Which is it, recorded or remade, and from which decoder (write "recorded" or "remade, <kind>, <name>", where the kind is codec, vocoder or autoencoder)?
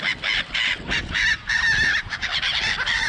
recorded